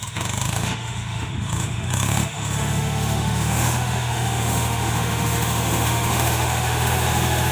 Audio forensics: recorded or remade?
remade